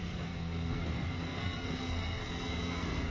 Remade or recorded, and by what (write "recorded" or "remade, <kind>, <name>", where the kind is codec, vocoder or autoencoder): remade, codec, SNAC